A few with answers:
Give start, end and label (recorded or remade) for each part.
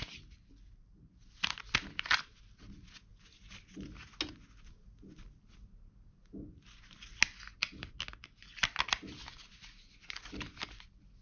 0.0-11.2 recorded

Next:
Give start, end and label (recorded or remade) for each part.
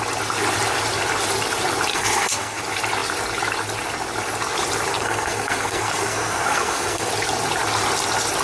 0.0-1.9 recorded; 1.9-2.6 remade; 2.6-4.9 recorded; 4.9-7.1 remade; 7.1-8.4 recorded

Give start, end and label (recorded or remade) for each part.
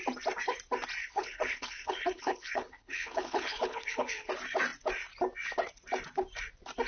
0.0-1.0 recorded; 1.0-4.3 remade; 4.3-6.9 recorded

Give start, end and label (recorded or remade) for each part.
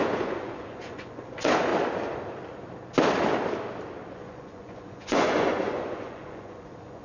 0.0-1.7 remade; 1.7-4.1 recorded; 4.1-7.0 remade